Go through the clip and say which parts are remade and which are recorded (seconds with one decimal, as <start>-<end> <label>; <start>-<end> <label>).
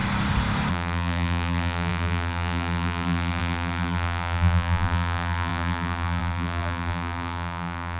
0.0-0.7 recorded; 0.7-8.0 remade